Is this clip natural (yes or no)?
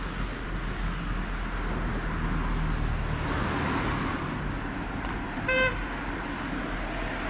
yes